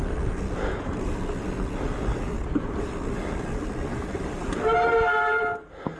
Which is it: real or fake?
real